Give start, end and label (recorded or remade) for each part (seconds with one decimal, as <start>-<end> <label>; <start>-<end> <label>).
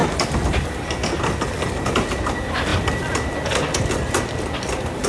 0.0-2.7 recorded; 2.7-3.8 remade; 3.8-5.1 recorded